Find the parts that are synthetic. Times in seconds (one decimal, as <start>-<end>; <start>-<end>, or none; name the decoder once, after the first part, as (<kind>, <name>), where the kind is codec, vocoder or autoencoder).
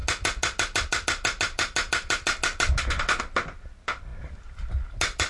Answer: none